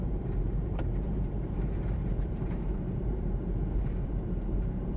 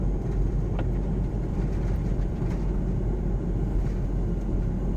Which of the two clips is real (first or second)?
second